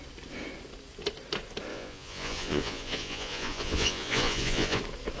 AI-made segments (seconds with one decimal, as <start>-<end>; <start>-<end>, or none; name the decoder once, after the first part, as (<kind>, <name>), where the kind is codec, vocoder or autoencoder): 1.7-4.8 (vocoder, Vocos)